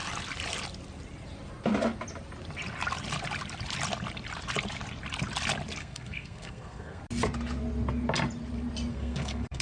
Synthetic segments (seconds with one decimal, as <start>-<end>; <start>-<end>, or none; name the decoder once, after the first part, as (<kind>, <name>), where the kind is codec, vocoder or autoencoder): 5.8-7.0 (codec, SNAC); 8.9-9.6